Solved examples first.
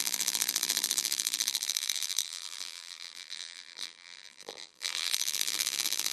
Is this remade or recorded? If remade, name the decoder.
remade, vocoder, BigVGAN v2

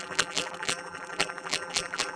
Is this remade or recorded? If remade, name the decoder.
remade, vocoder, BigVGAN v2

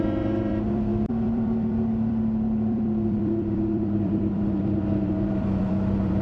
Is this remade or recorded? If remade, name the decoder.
remade, vocoder, BigVGAN v2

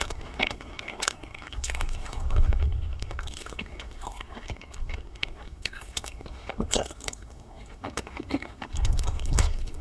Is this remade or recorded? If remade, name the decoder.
remade, codec, SNAC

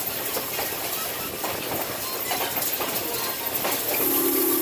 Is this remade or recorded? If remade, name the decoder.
recorded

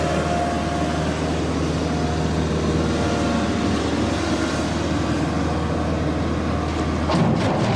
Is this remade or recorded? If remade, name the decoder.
recorded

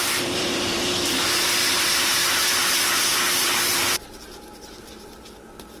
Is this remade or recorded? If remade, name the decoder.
remade, vocoder, BigVGAN v2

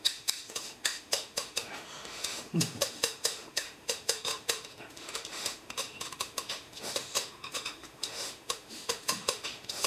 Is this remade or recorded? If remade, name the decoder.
remade, autoencoder, DAC-VAE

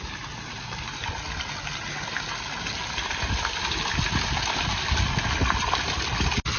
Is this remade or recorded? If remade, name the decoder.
recorded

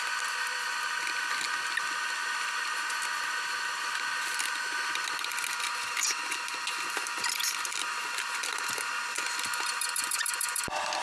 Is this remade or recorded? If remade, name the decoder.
recorded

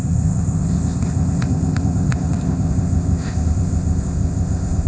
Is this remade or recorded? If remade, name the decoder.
remade, codec, ZipCodec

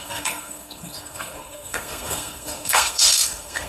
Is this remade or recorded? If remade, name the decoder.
remade, codec, SNAC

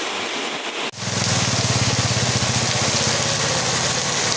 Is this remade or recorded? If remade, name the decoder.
recorded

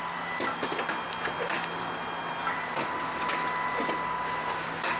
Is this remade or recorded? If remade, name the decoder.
recorded